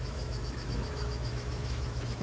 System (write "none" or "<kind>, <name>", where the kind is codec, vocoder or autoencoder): autoencoder, DAC-VAE